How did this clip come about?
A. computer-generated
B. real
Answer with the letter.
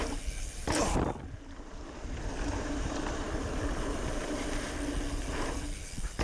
A